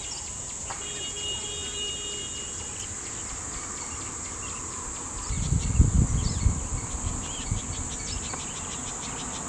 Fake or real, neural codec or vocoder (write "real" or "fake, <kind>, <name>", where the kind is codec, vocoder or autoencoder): real